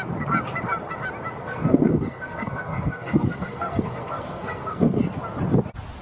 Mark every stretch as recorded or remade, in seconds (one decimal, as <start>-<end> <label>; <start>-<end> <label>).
0.0-1.4 recorded; 1.4-5.0 remade; 5.0-6.0 recorded